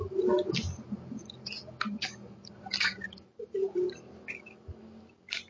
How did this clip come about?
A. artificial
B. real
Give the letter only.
B